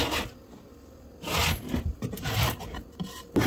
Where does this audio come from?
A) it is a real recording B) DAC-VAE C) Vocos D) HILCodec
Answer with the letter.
A